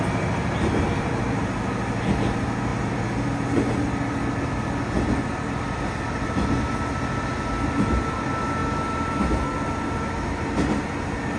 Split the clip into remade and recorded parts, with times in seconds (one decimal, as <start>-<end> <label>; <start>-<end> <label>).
0.0-11.4 recorded